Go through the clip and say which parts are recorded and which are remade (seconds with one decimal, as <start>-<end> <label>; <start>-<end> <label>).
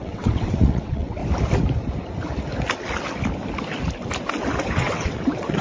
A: 0.0-1.2 remade; 1.2-4.6 recorded; 4.6-5.6 remade